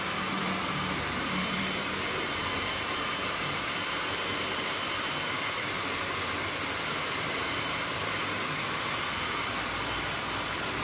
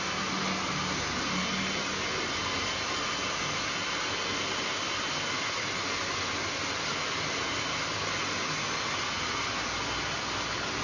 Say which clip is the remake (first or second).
first